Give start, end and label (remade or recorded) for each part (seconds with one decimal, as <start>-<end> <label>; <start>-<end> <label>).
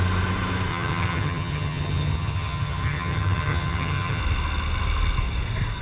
0.0-0.7 recorded; 0.7-4.2 remade; 4.2-5.8 recorded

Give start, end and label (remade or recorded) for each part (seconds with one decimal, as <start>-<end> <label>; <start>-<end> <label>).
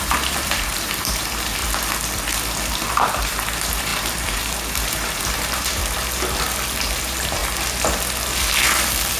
0.0-1.6 remade; 1.6-2.9 recorded; 2.9-5.8 remade; 5.8-7.0 recorded; 7.0-7.4 remade; 7.4-9.2 recorded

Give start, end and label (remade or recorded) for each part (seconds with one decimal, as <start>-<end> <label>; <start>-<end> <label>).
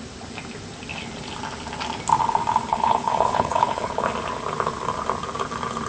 0.0-2.7 recorded; 2.7-4.1 remade; 4.1-5.9 recorded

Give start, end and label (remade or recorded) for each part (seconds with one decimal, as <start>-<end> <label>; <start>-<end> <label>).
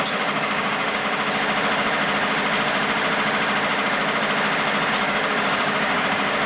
0.0-1.0 remade; 1.0-4.9 recorded; 4.9-6.5 remade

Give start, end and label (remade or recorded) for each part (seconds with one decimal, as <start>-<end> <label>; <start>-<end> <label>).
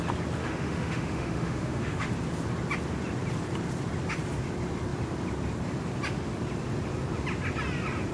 0.0-0.4 recorded; 0.4-2.1 remade; 2.1-8.1 recorded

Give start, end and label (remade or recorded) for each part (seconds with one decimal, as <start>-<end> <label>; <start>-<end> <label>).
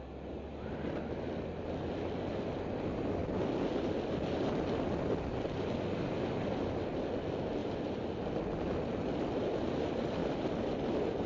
0.0-11.3 recorded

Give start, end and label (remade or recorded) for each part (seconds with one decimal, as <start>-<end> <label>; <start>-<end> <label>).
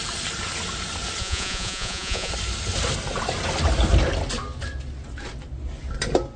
0.0-1.2 recorded; 1.2-2.3 remade; 2.3-6.4 recorded